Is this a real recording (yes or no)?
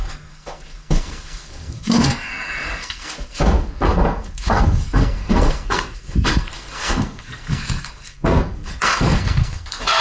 no